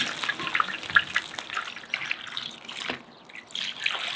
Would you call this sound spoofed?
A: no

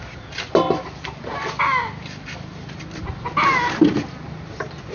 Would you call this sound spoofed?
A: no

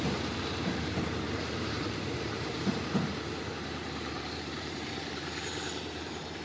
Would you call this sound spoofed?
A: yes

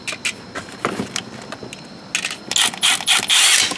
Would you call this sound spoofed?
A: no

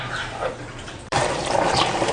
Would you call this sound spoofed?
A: yes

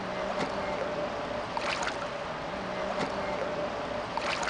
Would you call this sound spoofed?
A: no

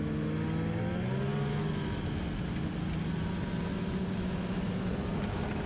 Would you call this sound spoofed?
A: no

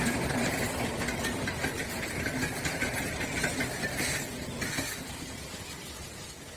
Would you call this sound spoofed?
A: no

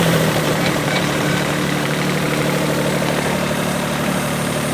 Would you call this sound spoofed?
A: yes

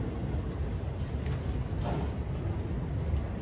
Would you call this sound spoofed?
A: no